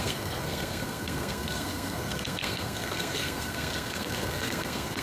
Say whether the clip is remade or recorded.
remade